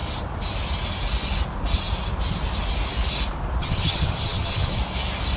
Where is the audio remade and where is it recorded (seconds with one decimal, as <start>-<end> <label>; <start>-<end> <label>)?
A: 0.0-3.6 recorded; 3.6-4.8 remade; 4.8-5.4 recorded